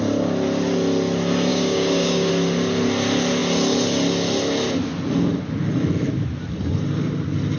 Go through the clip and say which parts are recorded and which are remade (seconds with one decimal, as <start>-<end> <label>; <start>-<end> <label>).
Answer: 0.0-1.5 recorded; 1.5-2.3 remade; 2.3-7.6 recorded